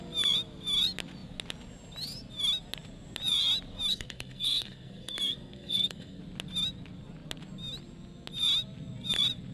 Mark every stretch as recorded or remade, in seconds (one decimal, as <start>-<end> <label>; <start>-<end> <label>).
0.0-3.9 recorded; 3.9-6.2 remade; 6.2-9.5 recorded